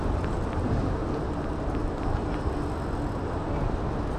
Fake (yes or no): no